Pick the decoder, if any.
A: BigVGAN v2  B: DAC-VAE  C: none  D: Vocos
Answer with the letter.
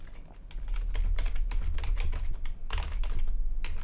C